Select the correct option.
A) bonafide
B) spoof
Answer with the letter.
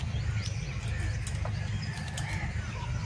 A